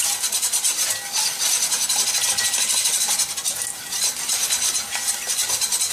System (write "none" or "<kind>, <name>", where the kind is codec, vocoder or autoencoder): none